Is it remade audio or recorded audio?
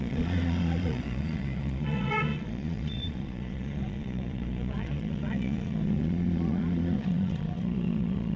remade